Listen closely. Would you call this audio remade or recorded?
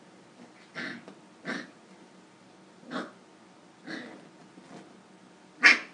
recorded